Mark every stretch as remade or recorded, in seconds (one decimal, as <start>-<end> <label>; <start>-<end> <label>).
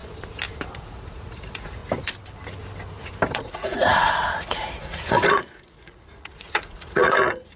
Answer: 0.0-0.8 recorded; 0.8-1.8 remade; 1.8-3.4 recorded; 3.4-7.6 remade